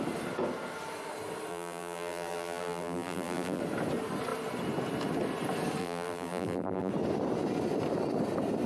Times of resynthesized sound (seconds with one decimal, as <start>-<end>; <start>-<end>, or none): 1.5-3.6; 5.8-6.9